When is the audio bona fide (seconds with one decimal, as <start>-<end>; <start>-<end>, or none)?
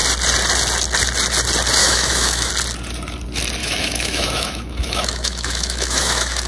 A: 0.0-1.8; 2.5-3.6